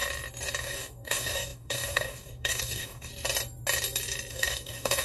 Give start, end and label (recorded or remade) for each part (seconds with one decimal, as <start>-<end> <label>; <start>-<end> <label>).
0.0-0.6 recorded; 0.6-3.1 remade; 3.1-4.3 recorded; 4.3-5.0 remade